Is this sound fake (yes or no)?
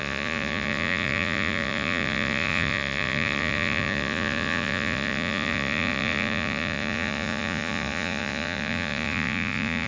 yes